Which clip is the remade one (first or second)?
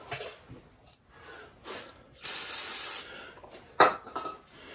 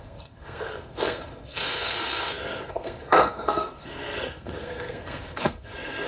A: second